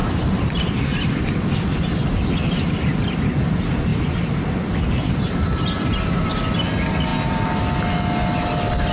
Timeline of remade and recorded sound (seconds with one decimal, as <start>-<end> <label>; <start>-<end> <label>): 0.0-1.2 remade; 1.2-3.9 recorded; 3.9-6.5 remade; 6.5-8.9 recorded

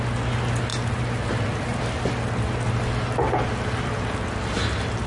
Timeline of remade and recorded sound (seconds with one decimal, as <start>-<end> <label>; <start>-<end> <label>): 0.0-5.1 recorded

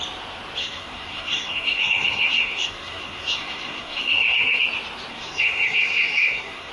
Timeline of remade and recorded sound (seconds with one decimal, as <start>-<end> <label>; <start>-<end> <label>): 0.0-0.6 recorded; 0.6-4.6 remade; 4.6-5.1 recorded; 5.1-6.7 remade

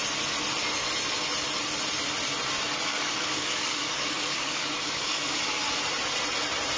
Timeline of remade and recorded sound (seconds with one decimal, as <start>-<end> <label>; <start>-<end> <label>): 0.0-2.9 recorded; 2.9-5.7 remade; 5.7-6.8 recorded

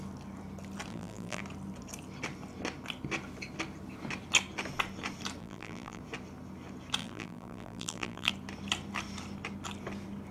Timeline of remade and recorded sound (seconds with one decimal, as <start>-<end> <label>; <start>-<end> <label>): 0.0-0.9 recorded; 0.9-1.4 remade; 1.4-5.4 recorded; 5.4-6.0 remade; 6.0-7.0 recorded; 7.0-8.3 remade; 8.3-10.3 recorded

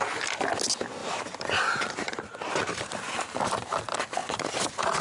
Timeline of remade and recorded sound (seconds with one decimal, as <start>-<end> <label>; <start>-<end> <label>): 0.0-1.0 recorded; 1.0-3.8 remade; 3.8-4.2 recorded; 4.2-5.0 remade

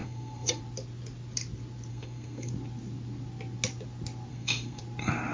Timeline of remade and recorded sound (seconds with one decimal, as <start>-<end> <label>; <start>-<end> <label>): 0.0-0.6 remade; 0.6-1.9 recorded; 1.9-2.5 remade; 2.5-4.3 recorded; 4.3-4.8 remade; 4.8-5.3 recorded